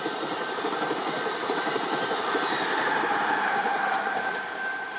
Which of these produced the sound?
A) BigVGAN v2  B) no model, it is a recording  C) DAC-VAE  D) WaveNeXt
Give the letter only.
A